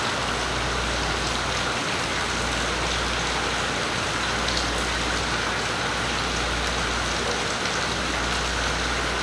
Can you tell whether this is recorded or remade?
recorded